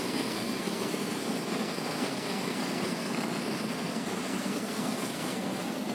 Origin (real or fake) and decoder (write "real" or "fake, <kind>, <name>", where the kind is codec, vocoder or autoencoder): fake, codec, SNAC